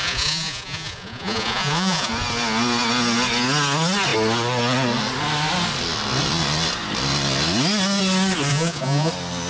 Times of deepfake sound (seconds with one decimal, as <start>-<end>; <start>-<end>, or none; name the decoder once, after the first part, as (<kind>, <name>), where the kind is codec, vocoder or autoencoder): 0.0-2.1 (vocoder, Vocos); 8.5-9.1